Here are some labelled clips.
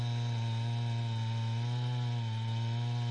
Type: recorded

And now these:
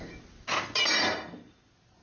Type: recorded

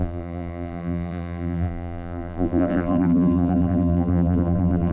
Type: remade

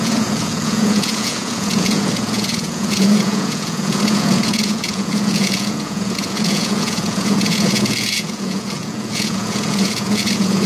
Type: remade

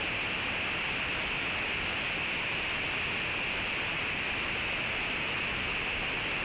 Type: recorded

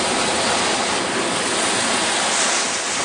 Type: recorded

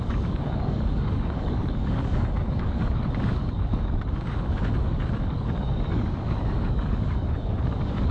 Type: remade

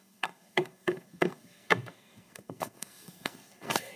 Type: remade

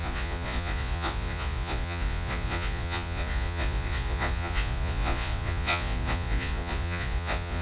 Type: remade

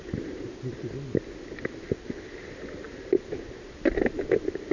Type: recorded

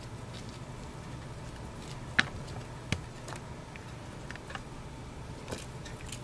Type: recorded